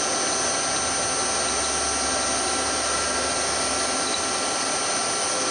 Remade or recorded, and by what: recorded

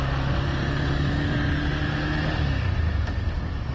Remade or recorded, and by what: recorded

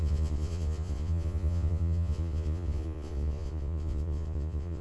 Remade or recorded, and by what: remade, vocoder, Vocos